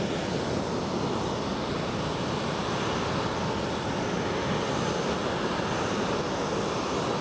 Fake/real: real